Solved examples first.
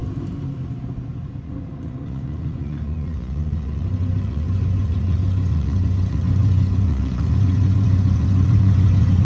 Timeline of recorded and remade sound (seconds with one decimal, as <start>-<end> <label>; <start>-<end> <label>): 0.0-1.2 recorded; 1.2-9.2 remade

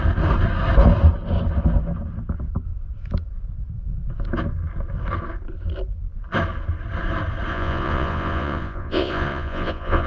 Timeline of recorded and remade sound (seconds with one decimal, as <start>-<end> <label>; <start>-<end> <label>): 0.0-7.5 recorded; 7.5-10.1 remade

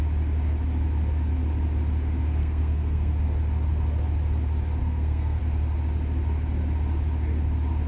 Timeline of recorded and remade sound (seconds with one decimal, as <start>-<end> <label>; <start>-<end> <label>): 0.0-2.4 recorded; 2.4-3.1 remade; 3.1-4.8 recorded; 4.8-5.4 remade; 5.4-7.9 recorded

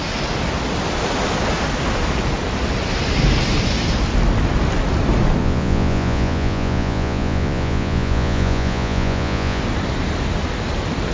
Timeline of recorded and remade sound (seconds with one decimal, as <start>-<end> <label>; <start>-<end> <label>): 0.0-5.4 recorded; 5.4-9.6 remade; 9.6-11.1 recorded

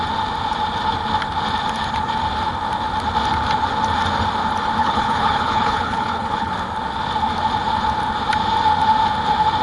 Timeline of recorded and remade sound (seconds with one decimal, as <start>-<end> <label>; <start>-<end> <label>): 0.0-4.8 recorded; 4.8-6.5 remade; 6.5-9.6 recorded

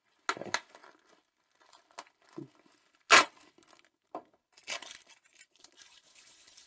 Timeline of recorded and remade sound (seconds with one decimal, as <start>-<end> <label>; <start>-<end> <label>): 0.0-6.7 recorded

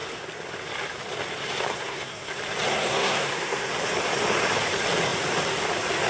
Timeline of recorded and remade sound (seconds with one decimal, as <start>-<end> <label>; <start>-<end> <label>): 0.0-1.7 recorded; 1.7-2.3 remade; 2.3-2.7 recorded; 2.7-3.7 remade; 3.7-6.1 recorded